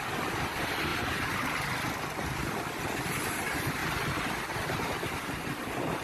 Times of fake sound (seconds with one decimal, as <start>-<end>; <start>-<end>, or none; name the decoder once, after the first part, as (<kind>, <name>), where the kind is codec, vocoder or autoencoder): none

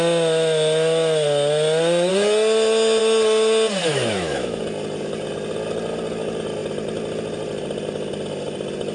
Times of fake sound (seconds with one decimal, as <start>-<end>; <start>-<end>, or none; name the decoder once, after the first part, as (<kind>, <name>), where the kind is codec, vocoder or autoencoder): 3.8-4.6 (autoencoder, DAC-VAE)

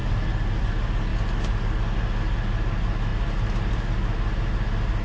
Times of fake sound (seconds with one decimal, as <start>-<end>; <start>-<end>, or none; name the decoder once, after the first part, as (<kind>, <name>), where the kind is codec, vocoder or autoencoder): none

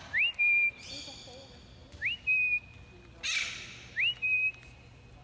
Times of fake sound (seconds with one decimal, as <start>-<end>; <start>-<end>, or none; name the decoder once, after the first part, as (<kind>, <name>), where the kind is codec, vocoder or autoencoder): none

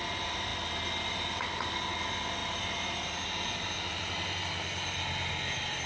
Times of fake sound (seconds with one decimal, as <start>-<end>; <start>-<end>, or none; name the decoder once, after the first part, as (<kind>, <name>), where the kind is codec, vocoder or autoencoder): none

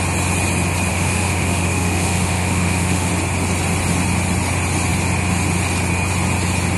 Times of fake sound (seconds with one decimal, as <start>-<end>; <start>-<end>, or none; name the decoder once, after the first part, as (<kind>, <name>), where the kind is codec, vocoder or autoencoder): 0.9-3.1 (autoencoder, DAC-VAE)

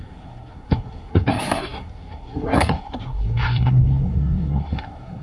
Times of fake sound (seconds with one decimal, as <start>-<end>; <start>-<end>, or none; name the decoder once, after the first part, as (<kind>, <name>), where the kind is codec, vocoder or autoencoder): 0.0-5.2 (codec, SNAC)

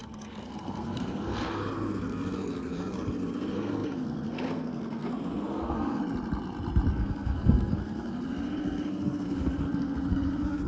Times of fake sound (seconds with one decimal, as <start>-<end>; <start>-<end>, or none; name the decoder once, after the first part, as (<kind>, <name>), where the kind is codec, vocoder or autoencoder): 0.0-6.0 (codec, SNAC); 6.9-10.7